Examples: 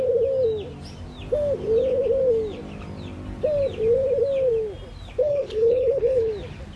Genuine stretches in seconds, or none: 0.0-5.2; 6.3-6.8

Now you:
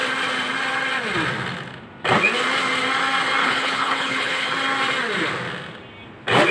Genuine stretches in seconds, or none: 0.0-3.4; 4.5-6.5

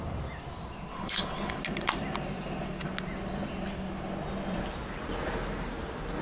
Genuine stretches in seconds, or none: 0.0-0.9; 1.6-6.2

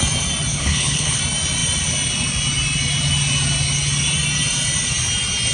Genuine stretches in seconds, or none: 0.0-0.5; 1.2-5.5

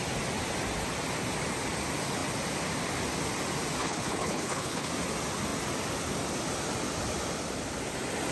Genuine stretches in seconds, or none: 0.0-3.8; 4.9-8.3